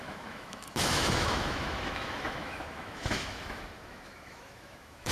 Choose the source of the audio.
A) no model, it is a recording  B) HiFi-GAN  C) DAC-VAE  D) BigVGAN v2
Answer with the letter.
C